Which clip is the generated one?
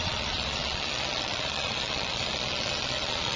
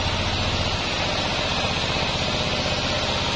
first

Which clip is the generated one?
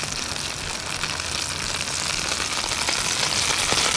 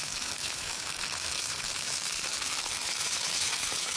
second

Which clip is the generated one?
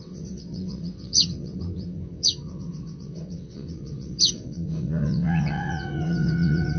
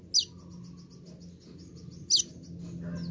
first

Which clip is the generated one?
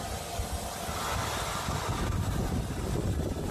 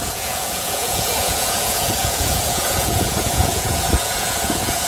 second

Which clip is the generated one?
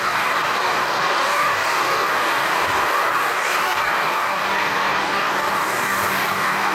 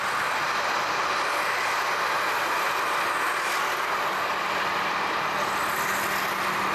first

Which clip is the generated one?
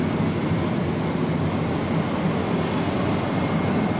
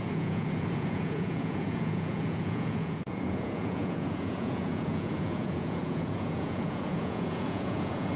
second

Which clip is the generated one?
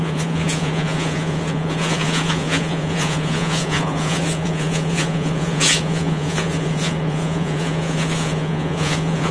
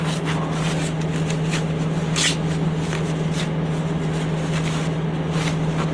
first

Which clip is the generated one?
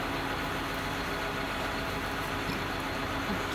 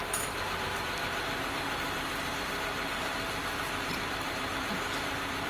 second